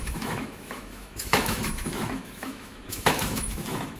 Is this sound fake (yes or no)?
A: yes